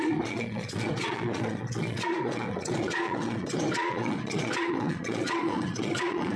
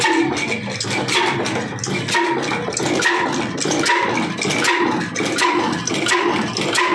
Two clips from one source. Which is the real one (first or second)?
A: second